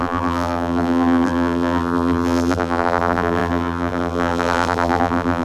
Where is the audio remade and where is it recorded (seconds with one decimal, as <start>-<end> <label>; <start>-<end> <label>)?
0.0-5.4 remade